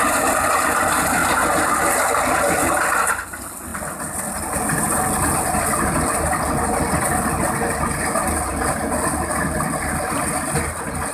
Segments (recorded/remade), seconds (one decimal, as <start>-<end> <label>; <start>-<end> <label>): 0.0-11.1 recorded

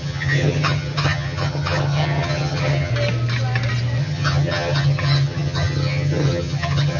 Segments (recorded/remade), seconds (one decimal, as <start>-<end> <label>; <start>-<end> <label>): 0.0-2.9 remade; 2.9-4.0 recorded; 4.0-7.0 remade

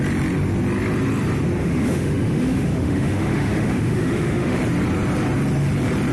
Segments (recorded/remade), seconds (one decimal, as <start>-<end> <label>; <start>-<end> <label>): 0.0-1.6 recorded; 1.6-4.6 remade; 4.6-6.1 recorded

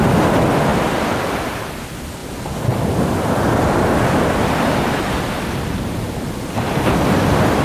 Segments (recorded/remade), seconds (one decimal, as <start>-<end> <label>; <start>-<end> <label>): 0.0-7.6 recorded

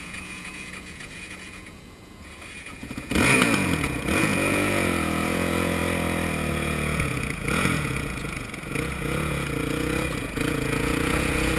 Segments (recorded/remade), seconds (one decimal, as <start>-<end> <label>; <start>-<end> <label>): 0.0-5.8 remade; 5.8-6.5 recorded; 6.5-11.6 remade